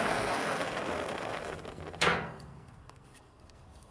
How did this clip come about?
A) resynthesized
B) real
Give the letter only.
A